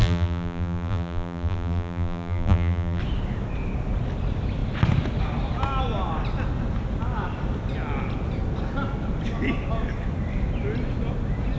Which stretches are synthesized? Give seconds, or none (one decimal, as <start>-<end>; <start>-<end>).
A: 0.0-3.0